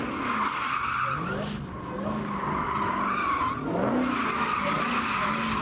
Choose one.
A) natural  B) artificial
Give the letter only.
A